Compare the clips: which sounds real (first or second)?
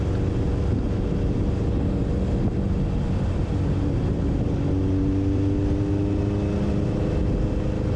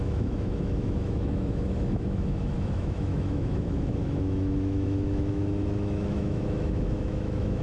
first